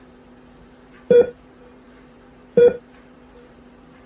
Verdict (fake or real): fake